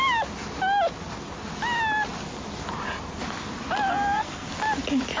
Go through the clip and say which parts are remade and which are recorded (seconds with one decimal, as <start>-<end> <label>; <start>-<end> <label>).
0.0-3.9 recorded; 3.9-4.5 remade; 4.5-5.2 recorded